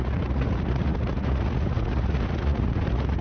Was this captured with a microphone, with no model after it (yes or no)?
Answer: no